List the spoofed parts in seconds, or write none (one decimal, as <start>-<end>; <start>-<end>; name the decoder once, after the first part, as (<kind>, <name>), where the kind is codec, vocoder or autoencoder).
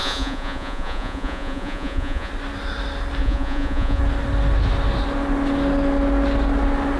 0.0-2.3 (vocoder, Vocos); 3.2-4.0